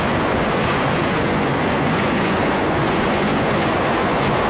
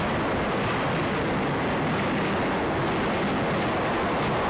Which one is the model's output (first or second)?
first